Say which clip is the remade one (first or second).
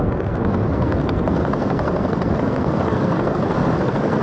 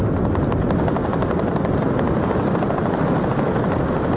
first